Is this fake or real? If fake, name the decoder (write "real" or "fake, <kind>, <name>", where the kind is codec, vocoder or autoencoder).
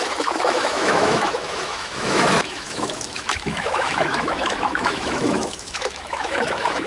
fake, autoencoder, DAC-VAE